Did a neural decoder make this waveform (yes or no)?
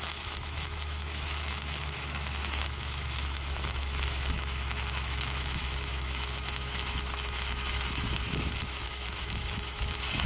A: yes